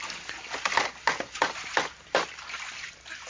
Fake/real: real